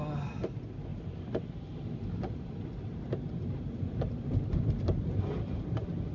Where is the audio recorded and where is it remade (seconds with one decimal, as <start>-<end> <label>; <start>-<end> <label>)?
0.0-0.9 recorded; 0.9-4.6 remade; 4.6-6.1 recorded